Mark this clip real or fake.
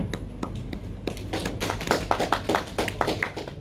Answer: real